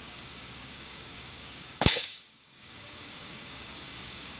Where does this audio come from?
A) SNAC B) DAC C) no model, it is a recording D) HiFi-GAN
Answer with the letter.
B